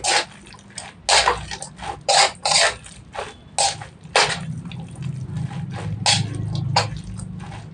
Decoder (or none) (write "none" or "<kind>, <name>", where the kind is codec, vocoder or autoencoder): none